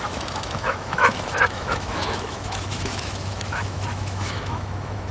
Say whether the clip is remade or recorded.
remade